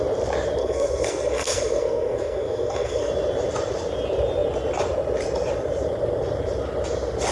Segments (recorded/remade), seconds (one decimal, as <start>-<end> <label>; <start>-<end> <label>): 0.0-0.6 recorded; 0.6-3.1 remade; 3.1-7.3 recorded